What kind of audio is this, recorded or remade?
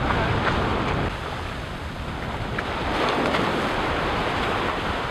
recorded